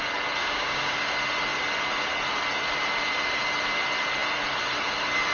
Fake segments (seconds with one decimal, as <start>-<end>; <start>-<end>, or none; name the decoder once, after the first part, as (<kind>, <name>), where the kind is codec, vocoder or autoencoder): 0.4-1.1 (codec, DAC)